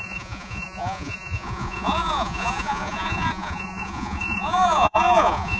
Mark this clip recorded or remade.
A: remade